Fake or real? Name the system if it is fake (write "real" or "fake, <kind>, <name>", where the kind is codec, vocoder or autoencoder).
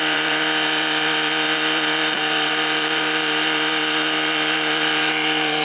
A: fake, vocoder, BigVGAN v2